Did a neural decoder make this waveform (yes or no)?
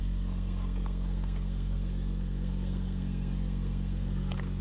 yes